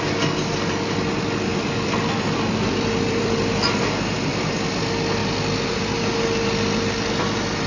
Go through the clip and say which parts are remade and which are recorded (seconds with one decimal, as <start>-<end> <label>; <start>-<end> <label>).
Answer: 0.0-1.5 recorded; 1.5-3.8 remade; 3.8-7.7 recorded